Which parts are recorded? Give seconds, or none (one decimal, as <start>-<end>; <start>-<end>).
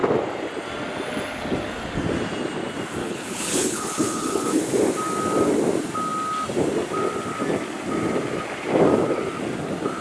0.0-3.0; 4.6-10.0